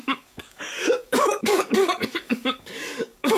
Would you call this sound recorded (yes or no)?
no